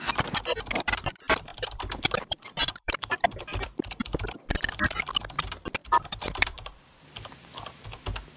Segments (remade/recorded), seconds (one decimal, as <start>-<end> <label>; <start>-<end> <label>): 0.0-1.5 recorded; 1.5-5.1 remade; 5.1-5.8 recorded; 5.8-7.8 remade; 7.8-8.4 recorded